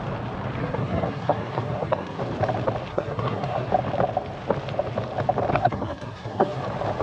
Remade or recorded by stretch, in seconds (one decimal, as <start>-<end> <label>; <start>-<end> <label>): 0.0-0.6 recorded; 0.6-2.2 remade; 2.2-2.9 recorded; 2.9-3.7 remade; 3.7-5.5 recorded; 5.5-6.6 remade; 6.6-7.0 recorded